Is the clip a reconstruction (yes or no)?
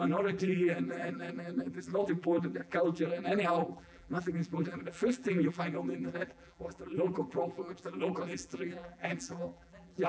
yes